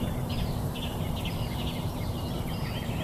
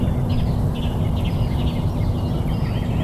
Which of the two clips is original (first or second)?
second